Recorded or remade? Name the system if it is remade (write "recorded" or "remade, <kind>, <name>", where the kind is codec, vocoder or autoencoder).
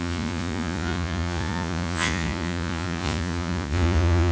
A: remade, vocoder, Vocos